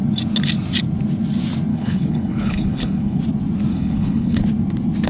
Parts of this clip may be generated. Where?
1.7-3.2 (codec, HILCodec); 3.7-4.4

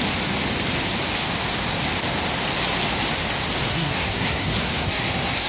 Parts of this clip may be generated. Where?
3.7-5.5 (codec, SNAC)

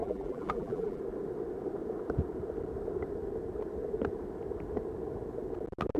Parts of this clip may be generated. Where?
0.0-1.0 (vocoder, BigVGAN v2)

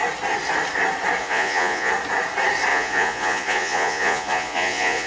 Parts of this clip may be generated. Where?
1.2-1.9 (vocoder, Vocos); 2.7-5.1

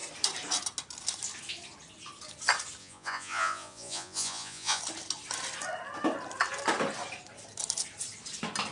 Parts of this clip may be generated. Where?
2.8-4.8 (vocoder, Vocos)

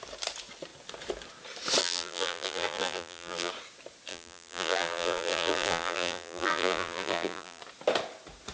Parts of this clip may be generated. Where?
1.8-3.5 (vocoder, BigVGAN v2); 4.1-7.6

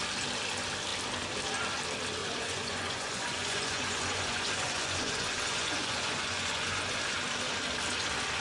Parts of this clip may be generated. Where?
2.2-7.0 (vocoder, Vocos)

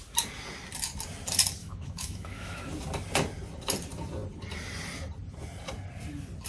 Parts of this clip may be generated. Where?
1.6-2.7 (autoencoder, DAC-VAE)